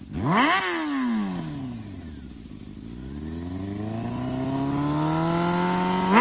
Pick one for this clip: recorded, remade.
recorded